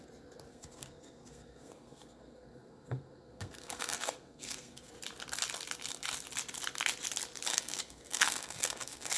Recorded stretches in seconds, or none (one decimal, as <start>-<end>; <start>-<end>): 0.0-0.5; 4.9-7.5